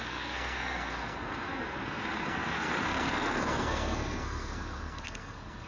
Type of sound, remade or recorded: remade